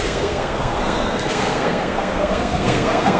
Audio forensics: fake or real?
fake